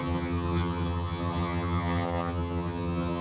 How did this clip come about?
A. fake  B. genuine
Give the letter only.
A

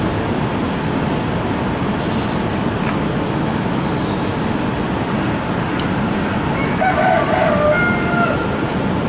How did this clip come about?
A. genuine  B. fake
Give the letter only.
A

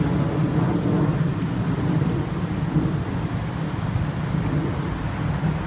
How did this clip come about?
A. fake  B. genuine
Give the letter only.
B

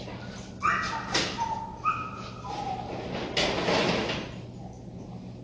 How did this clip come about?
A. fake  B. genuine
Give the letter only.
B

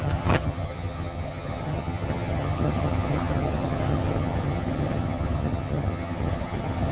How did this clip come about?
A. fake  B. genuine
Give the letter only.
A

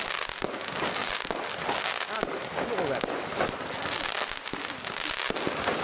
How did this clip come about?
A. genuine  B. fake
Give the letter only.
A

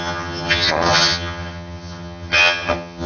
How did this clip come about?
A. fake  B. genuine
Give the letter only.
A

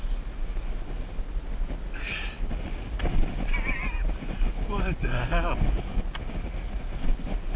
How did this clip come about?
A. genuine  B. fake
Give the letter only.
A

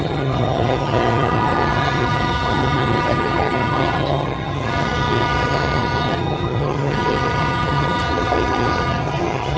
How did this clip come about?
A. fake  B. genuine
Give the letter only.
A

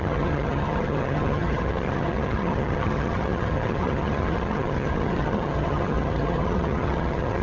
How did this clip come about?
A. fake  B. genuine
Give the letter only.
A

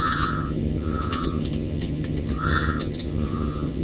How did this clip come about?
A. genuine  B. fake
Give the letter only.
B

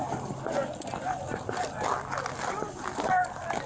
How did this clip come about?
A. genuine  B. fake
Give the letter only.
A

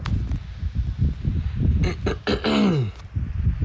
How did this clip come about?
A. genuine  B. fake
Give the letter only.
A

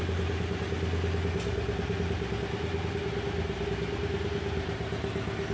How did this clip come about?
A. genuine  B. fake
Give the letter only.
A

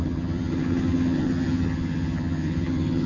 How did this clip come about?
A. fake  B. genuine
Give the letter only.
A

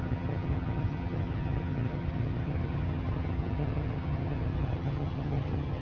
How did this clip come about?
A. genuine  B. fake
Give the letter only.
B